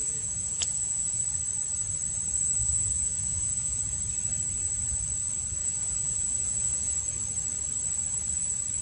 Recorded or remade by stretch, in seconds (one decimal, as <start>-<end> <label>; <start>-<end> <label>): 0.0-1.2 remade; 1.2-2.6 recorded; 2.6-3.8 remade; 3.8-5.6 recorded; 5.6-7.0 remade; 7.0-8.8 recorded